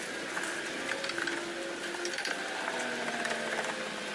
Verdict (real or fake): real